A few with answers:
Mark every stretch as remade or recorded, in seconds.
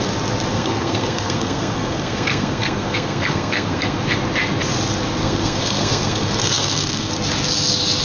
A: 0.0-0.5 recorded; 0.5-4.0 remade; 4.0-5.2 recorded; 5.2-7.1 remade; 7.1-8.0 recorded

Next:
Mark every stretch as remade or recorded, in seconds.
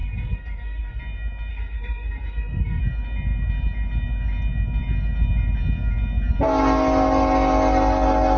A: 0.0-1.0 remade; 1.0-1.5 recorded; 1.5-2.8 remade; 2.8-8.4 recorded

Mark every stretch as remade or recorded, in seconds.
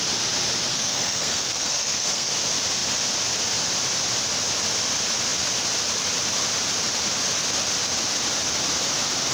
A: 0.0-0.7 recorded; 0.7-2.3 remade; 2.3-9.3 recorded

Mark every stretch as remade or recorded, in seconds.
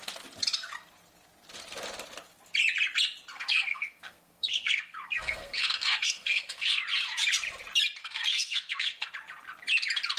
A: 0.0-3.3 recorded; 3.3-6.8 remade; 6.8-8.0 recorded; 8.0-9.1 remade; 9.1-10.2 recorded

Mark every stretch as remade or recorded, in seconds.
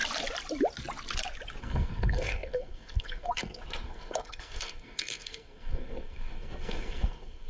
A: 0.0-1.6 recorded; 1.6-7.5 remade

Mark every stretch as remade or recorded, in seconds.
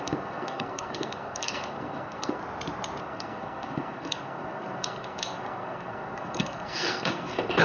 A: 0.0-2.4 remade; 2.4-3.0 recorded; 3.0-7.6 remade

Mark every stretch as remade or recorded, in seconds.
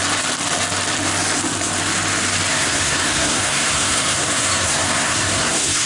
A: 0.0-2.5 recorded; 2.5-5.9 remade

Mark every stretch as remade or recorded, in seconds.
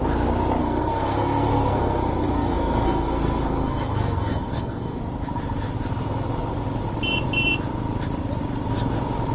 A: 0.0-0.6 recorded; 0.6-5.0 remade; 5.0-9.3 recorded